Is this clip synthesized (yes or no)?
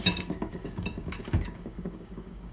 yes